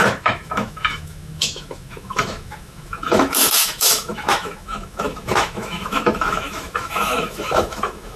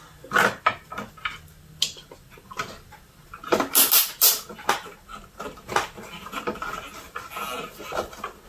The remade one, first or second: first